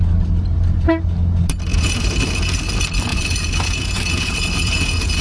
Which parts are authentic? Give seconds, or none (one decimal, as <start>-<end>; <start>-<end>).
0.0-1.7; 2.7-3.1